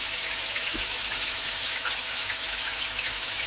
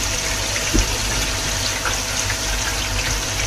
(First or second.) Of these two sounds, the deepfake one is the first